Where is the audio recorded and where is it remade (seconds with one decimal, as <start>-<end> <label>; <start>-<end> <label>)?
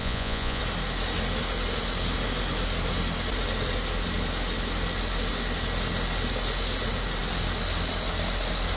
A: 0.0-0.6 remade; 0.6-8.8 recorded